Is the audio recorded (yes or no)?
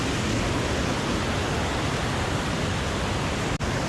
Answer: yes